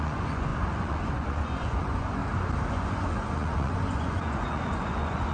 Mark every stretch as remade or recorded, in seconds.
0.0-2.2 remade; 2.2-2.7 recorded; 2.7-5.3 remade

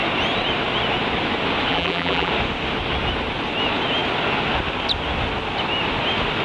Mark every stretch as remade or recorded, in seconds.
0.0-1.7 recorded; 1.7-2.3 remade; 2.3-6.4 recorded